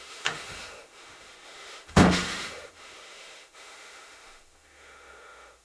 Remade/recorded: remade